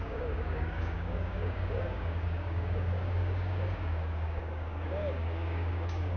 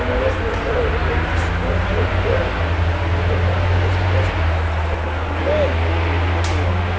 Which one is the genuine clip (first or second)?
second